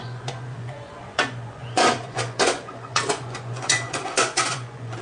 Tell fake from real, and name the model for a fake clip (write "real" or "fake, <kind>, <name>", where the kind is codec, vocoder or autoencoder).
fake, vocoder, Vocos